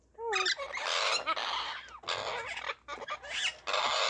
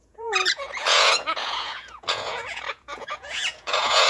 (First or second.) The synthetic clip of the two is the second